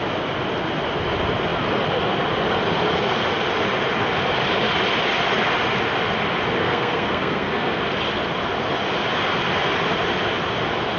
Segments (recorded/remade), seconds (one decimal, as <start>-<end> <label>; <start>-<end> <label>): 0.0-6.6 recorded; 6.6-7.8 remade; 7.8-11.0 recorded